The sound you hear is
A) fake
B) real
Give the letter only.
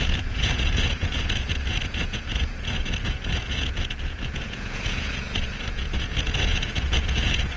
A